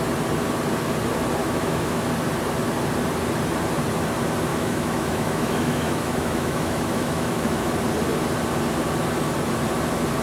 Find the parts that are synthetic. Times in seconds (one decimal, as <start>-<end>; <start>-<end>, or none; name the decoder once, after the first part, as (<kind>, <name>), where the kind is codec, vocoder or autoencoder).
1.4-2.1 (autoencoder, DAC-VAE); 4.5-7.7